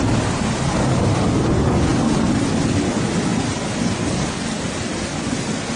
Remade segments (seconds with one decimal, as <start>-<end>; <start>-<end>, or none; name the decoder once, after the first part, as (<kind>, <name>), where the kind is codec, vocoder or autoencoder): none